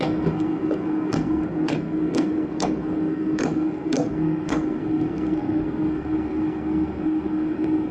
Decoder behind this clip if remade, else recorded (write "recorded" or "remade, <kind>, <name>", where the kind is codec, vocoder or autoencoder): remade, codec, SNAC